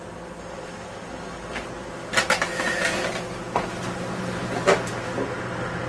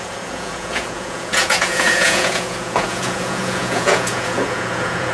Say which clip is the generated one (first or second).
second